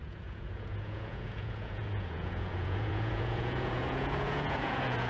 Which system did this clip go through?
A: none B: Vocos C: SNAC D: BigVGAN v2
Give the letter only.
B